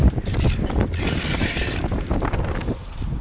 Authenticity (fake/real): real